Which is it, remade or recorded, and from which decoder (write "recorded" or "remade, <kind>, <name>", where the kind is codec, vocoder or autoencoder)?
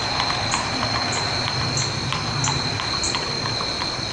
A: recorded